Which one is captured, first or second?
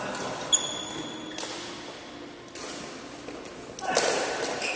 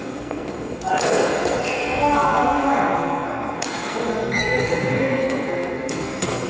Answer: first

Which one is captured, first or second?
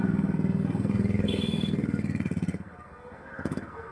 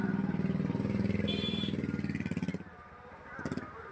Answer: second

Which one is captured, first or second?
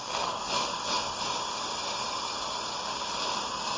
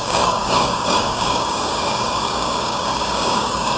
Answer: first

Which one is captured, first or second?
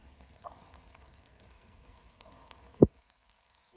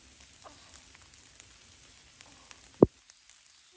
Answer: second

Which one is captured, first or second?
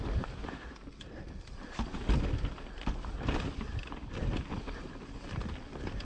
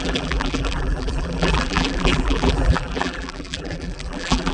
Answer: first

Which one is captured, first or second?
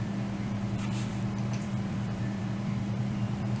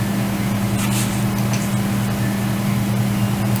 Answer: second